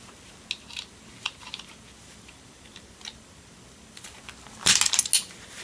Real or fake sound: real